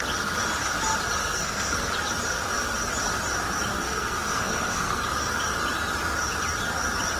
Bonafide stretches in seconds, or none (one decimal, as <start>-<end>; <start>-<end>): 0.0-1.2; 1.9-3.7; 5.4-7.2